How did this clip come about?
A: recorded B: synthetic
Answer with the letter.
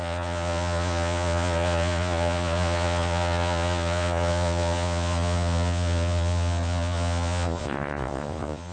B